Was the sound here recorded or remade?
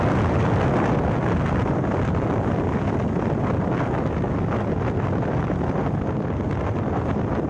recorded